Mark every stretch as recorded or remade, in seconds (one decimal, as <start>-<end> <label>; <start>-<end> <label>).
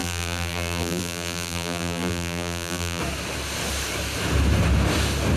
0.0-3.0 remade; 3.0-5.4 recorded